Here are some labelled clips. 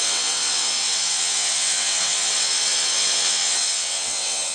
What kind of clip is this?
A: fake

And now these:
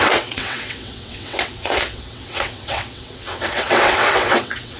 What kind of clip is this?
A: fake